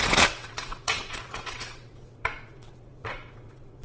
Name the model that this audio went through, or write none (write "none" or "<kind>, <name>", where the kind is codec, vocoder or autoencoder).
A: vocoder, WaveNeXt